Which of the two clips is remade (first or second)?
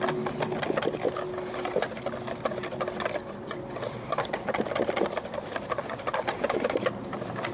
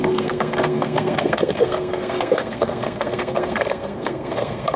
second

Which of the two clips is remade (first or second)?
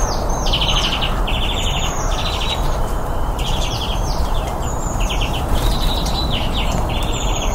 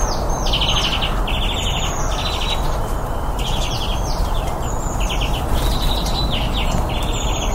first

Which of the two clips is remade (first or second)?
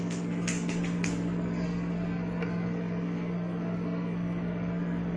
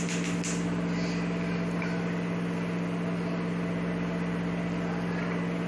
first